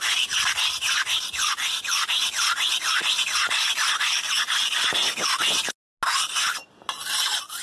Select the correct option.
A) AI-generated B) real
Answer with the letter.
B